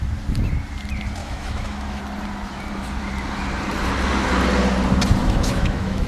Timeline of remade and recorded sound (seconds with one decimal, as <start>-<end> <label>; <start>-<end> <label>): 0.0-1.2 recorded; 1.2-2.0 remade; 2.0-5.2 recorded; 5.2-6.1 remade

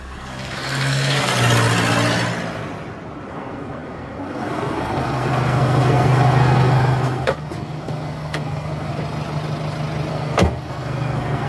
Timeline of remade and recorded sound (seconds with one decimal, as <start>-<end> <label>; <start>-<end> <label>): 0.0-1.3 remade; 1.3-3.3 recorded; 3.3-8.9 remade; 8.9-10.1 recorded; 10.1-11.5 remade

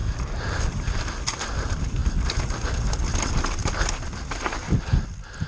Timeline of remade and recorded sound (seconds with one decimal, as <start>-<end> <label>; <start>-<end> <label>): 0.0-5.5 recorded

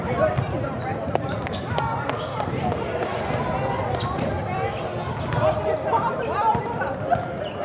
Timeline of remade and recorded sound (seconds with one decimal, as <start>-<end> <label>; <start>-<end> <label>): 0.0-3.1 remade; 3.1-6.1 recorded; 6.1-7.6 remade

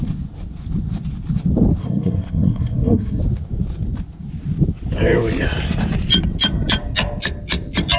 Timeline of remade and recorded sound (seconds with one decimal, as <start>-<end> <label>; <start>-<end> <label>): 0.0-1.8 recorded; 1.8-3.2 remade; 3.2-8.0 recorded